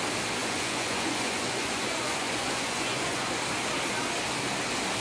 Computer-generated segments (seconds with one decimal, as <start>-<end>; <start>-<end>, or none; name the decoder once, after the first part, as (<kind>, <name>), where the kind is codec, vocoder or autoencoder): 0.4-3.4 (vocoder, Vocos)